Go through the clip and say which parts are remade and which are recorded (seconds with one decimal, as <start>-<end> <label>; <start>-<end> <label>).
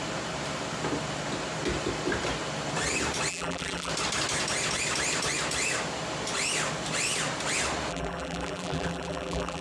0.0-3.3 recorded; 3.3-3.9 remade; 3.9-7.9 recorded; 7.9-9.6 remade